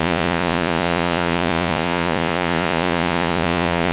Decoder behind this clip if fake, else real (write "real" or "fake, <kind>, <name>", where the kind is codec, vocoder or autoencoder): fake, vocoder, Vocos